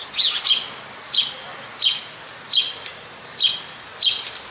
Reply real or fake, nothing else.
real